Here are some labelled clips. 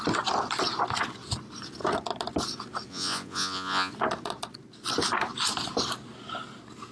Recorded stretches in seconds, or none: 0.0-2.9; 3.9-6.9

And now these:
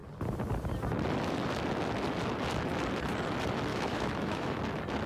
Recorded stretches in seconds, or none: 0.0-3.7; 4.6-5.1

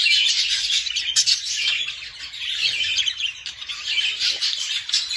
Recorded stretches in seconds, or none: 0.0-2.1

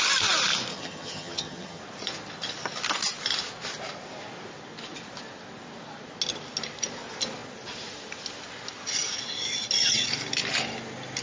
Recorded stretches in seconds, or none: 0.0-0.7; 1.8-11.2